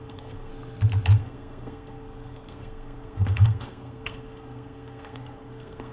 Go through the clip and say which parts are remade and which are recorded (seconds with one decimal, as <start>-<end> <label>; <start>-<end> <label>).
0.0-0.5 remade; 0.5-1.2 recorded; 1.2-5.9 remade